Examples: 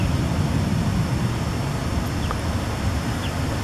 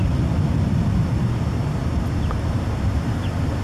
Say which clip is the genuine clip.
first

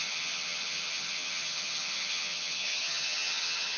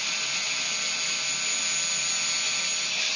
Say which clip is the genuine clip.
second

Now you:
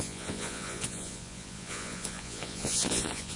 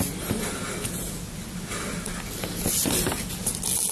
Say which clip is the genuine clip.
second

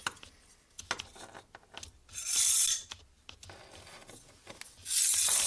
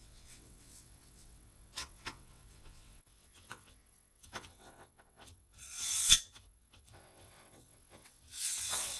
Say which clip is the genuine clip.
first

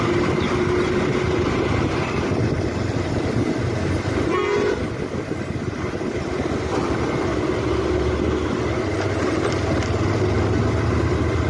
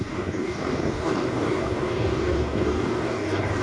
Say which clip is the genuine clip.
first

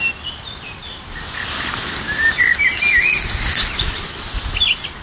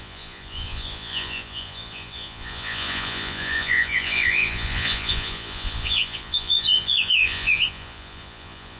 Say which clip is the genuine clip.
first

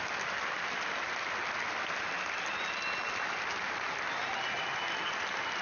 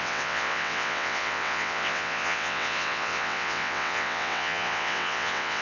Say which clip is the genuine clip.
first